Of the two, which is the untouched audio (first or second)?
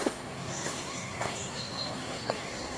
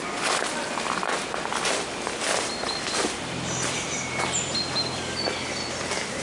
second